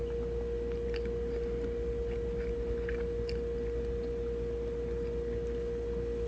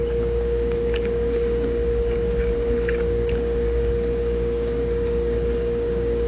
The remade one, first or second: second